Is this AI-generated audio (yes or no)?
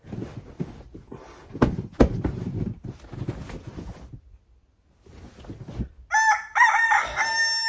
no